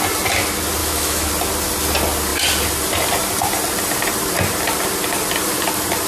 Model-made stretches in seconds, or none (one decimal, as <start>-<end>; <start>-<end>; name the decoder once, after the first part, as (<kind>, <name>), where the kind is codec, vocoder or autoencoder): 0.8-1.3 (autoencoder, DAC-VAE)